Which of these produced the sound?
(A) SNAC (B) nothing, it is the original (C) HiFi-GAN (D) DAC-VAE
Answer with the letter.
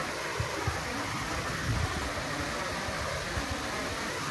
B